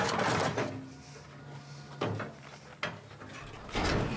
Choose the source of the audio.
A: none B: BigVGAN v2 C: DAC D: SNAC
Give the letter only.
A